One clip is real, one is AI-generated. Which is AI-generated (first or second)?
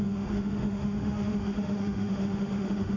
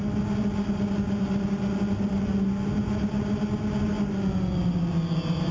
first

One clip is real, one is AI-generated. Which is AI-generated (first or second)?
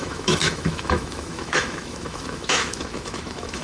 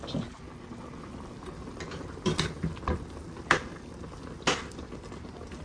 first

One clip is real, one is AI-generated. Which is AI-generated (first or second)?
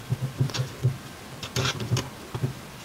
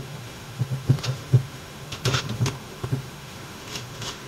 second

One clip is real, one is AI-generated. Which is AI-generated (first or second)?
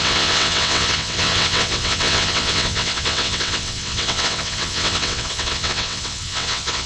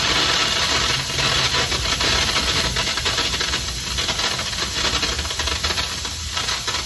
first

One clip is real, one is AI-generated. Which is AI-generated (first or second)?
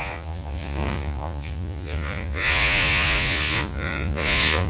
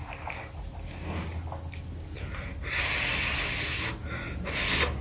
first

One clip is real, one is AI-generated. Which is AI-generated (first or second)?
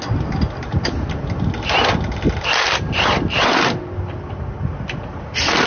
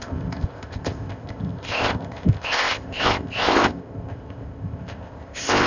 second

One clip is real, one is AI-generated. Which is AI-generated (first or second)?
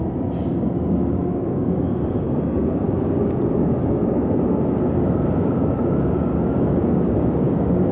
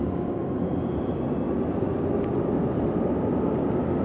first